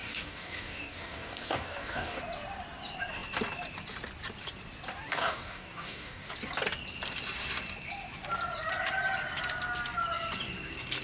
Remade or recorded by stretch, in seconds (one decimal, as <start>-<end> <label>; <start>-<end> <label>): 0.0-2.2 remade; 2.2-5.1 recorded; 5.1-6.3 remade; 6.3-11.0 recorded